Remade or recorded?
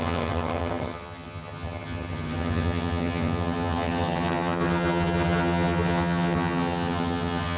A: remade